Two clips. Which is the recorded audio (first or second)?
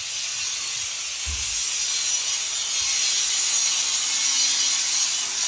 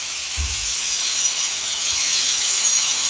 first